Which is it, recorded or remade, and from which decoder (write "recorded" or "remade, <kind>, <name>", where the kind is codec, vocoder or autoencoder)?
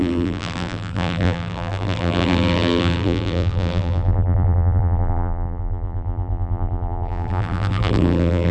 remade, vocoder, BigVGAN v2